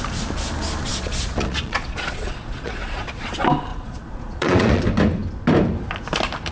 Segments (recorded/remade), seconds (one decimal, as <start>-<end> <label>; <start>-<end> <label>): 0.0-0.9 recorded; 0.9-3.3 remade; 3.3-3.7 recorded; 3.7-4.8 remade; 4.8-6.5 recorded